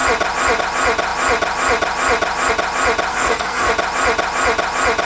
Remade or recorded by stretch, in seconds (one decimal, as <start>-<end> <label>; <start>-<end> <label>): 0.0-3.1 recorded; 3.1-3.7 remade; 3.7-5.0 recorded